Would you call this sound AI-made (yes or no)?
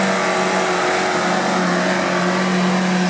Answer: no